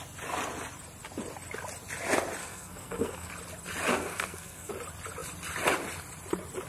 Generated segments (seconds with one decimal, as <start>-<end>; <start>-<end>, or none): 2.4-3.3; 3.9-4.7